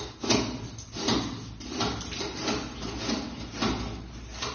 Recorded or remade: recorded